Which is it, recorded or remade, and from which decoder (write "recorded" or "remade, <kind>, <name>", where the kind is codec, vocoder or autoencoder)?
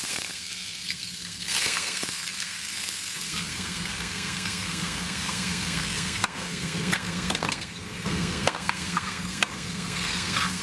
remade, codec, SNAC